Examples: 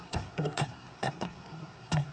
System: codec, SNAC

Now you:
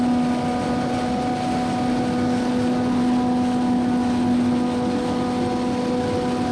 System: none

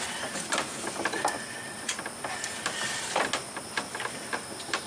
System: none